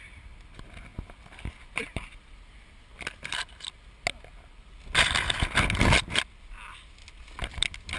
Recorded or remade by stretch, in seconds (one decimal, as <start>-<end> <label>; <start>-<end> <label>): 0.0-8.0 recorded